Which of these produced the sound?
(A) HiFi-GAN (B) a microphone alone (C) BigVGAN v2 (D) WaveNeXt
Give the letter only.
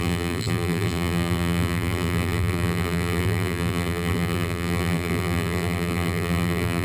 C